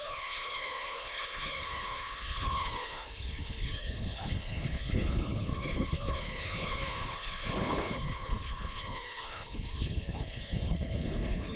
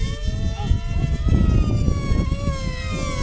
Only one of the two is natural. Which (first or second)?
second